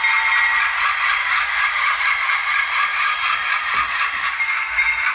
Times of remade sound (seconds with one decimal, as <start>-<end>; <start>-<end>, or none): 1.2-2.0; 2.9-3.5